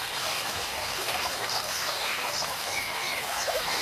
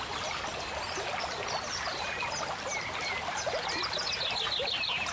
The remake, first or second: first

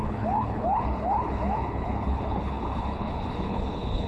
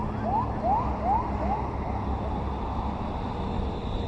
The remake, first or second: first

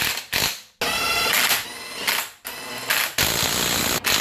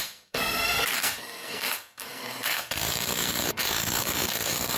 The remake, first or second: second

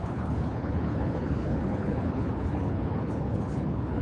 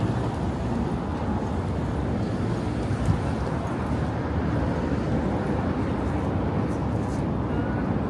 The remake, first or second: first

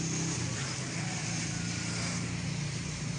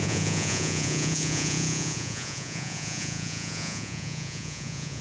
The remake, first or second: second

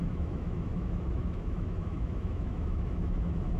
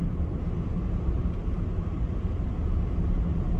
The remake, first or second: first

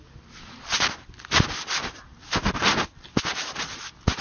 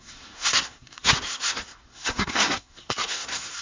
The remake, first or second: second